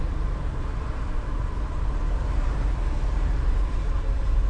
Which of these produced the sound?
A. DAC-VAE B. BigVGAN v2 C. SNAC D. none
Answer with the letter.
B